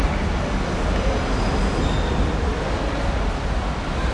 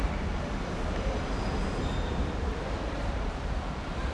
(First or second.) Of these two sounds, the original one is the first